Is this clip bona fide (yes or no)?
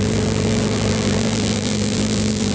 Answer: no